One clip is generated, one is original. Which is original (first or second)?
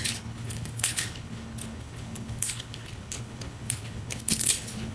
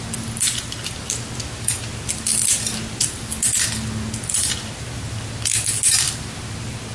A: second